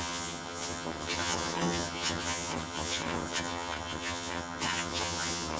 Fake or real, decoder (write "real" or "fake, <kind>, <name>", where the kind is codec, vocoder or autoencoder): fake, vocoder, HiFi-GAN